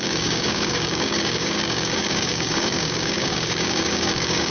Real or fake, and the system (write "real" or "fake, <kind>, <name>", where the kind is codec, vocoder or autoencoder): fake, codec, DAC